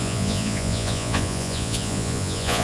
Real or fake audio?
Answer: fake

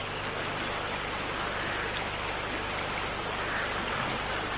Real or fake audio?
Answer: real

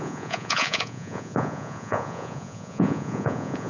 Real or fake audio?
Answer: fake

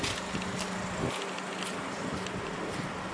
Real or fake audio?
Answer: real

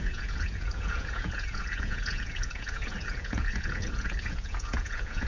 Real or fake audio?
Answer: fake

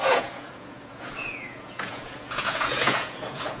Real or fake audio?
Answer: fake